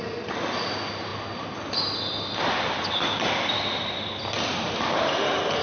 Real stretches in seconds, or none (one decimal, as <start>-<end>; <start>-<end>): 0.0-5.6